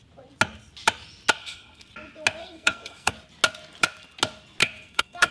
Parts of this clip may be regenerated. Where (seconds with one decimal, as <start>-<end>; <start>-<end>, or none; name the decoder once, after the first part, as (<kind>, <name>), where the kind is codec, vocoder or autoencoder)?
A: 1.4-1.9 (codec, SNAC); 2.4-3.1; 4.6-5.3